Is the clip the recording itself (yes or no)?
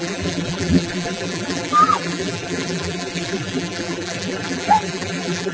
no